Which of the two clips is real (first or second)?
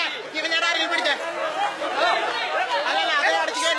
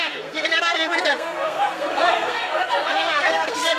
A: first